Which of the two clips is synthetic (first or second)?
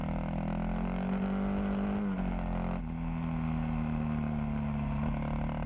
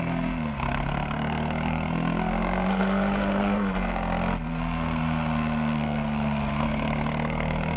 second